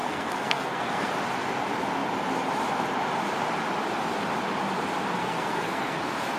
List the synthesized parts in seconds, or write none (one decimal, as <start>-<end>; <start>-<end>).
0.0-1.1; 5.2-6.0